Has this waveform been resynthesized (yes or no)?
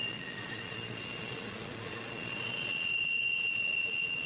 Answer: yes